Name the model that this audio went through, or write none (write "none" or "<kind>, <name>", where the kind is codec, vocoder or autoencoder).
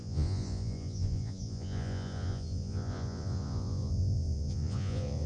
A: vocoder, Vocos